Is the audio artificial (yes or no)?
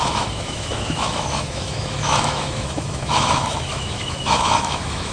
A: yes